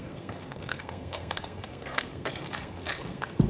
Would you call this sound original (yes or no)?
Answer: no